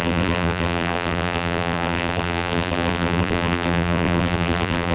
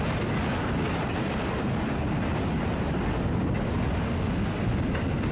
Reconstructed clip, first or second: first